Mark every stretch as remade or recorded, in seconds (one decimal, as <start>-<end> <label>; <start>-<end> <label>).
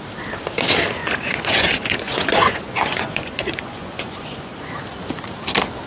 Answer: 0.0-1.0 recorded; 1.0-4.5 remade; 4.5-5.9 recorded